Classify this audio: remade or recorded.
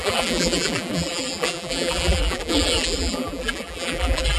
remade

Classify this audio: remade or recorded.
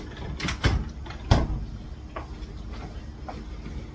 recorded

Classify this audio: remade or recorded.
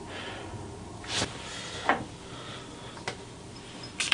recorded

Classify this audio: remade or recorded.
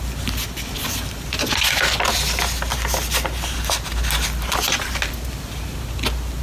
recorded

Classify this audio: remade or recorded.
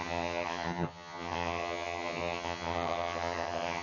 remade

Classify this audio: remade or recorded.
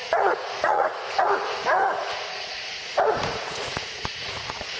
remade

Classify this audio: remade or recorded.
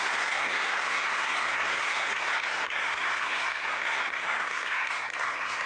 remade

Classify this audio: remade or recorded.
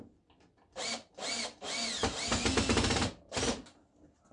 recorded